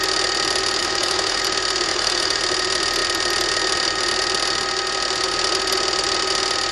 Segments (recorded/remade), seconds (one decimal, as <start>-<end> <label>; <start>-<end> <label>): 0.0-0.8 recorded; 0.8-1.4 remade; 1.4-1.9 recorded; 1.9-2.4 remade; 2.4-6.7 recorded